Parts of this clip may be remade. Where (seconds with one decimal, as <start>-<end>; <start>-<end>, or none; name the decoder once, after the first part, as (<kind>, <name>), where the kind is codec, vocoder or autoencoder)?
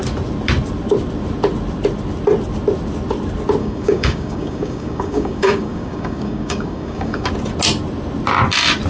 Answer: 3.6-7.3 (codec, DAC)